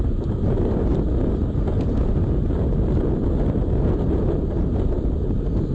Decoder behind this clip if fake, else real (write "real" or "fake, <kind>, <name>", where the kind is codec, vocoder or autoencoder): real